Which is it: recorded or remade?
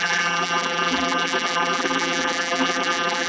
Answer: remade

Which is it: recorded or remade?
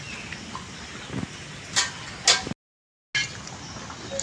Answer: recorded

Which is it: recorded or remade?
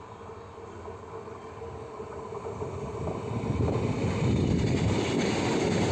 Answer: recorded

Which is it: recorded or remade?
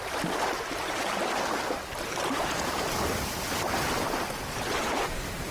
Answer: recorded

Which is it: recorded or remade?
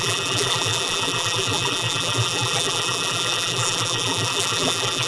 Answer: remade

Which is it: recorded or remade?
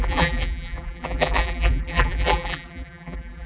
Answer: remade